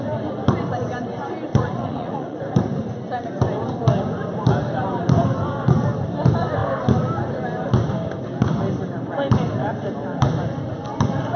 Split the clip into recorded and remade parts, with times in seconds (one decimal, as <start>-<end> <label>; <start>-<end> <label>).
0.0-1.5 recorded; 1.5-2.4 remade; 2.4-11.4 recorded